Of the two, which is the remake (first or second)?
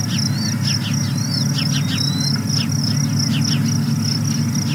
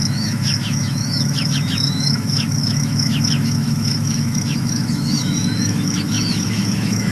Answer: second